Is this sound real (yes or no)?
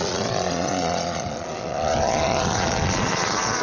no